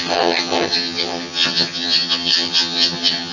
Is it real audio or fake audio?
fake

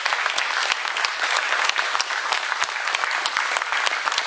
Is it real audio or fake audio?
real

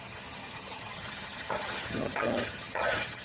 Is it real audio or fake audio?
fake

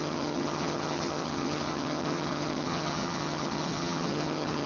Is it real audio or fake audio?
fake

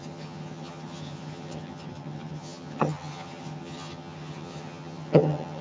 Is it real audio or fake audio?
fake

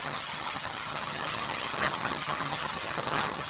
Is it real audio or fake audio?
fake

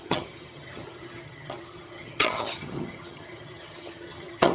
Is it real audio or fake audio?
fake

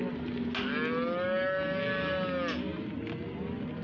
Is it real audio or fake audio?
real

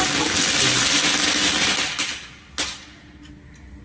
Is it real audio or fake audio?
real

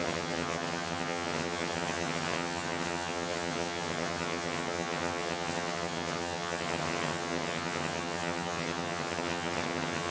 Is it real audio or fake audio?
fake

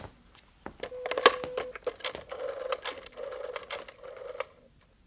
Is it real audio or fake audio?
real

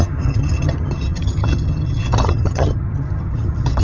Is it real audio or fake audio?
fake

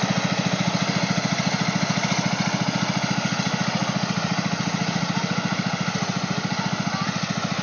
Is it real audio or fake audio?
real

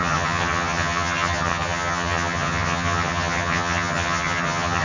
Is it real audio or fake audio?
fake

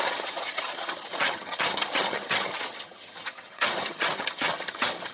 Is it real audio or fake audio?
fake